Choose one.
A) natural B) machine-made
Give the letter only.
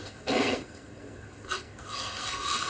B